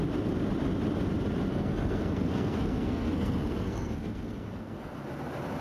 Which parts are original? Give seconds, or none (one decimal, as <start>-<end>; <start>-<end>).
0.0-1.5; 4.9-5.6